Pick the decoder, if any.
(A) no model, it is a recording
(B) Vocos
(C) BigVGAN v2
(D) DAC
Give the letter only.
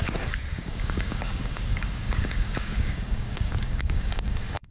D